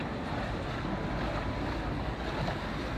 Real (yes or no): yes